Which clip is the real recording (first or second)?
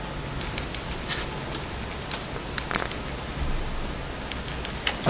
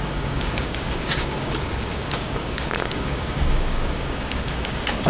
first